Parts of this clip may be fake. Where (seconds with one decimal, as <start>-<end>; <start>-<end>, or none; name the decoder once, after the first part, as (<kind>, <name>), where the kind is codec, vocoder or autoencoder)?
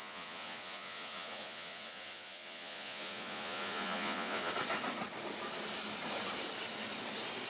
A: 0.0-4.5 (vocoder, Vocos)